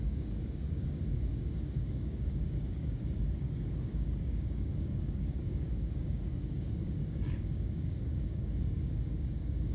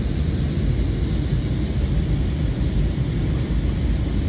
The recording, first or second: second